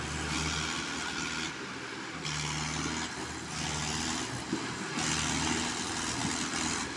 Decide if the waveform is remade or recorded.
recorded